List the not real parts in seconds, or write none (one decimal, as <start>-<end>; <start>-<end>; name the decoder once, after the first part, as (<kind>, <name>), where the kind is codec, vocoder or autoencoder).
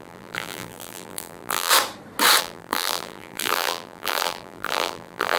0.0-1.7 (vocoder, BigVGAN v2); 2.4-5.4